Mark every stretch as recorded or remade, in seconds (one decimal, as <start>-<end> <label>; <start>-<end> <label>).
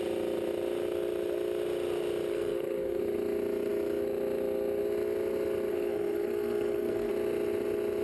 0.0-2.3 recorded; 2.3-3.0 remade; 3.0-5.7 recorded; 5.7-7.1 remade; 7.1-8.0 recorded